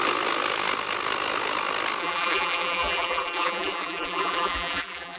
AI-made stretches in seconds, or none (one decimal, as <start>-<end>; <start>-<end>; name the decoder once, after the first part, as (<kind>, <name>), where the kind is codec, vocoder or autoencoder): 2.0-5.2 (vocoder, BigVGAN v2)